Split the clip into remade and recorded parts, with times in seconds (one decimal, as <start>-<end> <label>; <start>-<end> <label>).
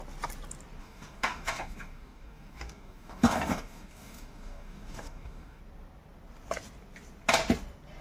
0.0-0.8 recorded; 0.8-5.6 remade; 5.6-8.0 recorded